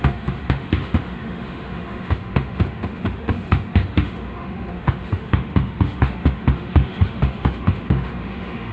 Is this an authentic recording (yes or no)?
no